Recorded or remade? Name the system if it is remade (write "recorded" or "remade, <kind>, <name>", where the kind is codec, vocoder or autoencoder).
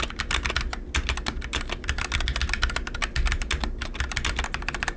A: recorded